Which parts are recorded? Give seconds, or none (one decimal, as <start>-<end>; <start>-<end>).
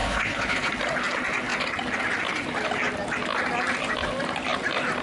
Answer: 0.7-5.0